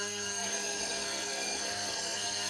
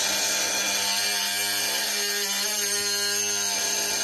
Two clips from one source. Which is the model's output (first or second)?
first